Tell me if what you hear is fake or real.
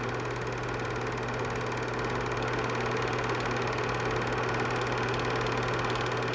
real